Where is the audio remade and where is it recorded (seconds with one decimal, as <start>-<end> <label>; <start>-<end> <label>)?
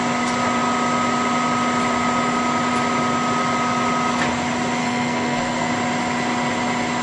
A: 0.0-4.8 recorded; 4.8-5.7 remade; 5.7-7.0 recorded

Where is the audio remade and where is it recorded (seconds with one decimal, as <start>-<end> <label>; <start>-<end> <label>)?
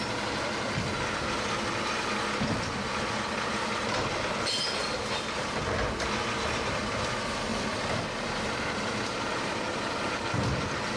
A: 0.0-11.0 recorded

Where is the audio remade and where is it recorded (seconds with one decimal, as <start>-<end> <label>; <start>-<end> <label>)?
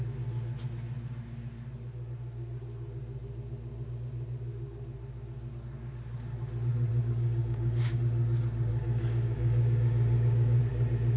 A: 0.0-6.9 recorded; 6.9-8.0 remade; 8.0-8.7 recorded; 8.7-10.6 remade; 10.6-11.2 recorded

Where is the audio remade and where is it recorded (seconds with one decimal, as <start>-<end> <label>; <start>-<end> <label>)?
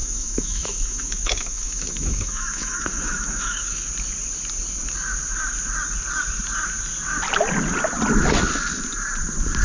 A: 0.0-3.9 remade; 3.9-9.6 recorded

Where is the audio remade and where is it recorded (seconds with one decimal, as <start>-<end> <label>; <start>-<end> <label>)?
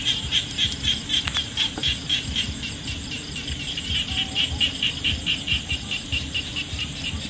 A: 0.0-7.3 recorded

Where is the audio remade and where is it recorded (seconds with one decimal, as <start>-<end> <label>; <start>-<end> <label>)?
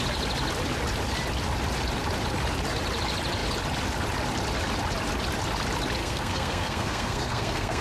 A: 0.0-6.0 recorded; 6.0-7.8 remade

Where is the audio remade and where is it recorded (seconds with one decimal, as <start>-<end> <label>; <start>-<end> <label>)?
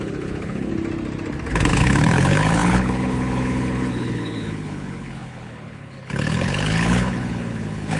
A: 0.0-0.7 remade; 0.7-1.5 recorded; 1.5-8.0 remade